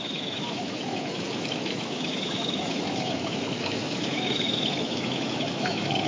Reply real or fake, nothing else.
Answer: fake